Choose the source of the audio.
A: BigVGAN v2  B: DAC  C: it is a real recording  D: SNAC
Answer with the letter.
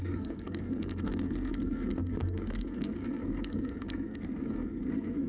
D